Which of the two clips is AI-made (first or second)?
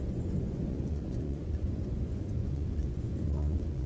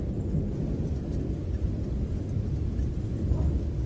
first